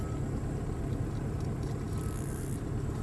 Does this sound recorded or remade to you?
recorded